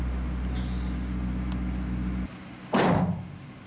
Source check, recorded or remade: recorded